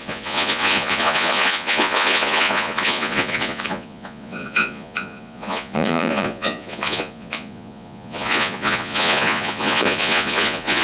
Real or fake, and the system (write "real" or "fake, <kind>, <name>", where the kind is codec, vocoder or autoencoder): fake, vocoder, Vocos